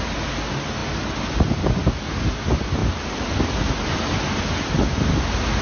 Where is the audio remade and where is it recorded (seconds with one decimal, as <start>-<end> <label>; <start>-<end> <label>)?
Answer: 0.0-5.6 recorded